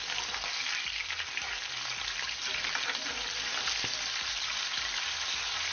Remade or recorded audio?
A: recorded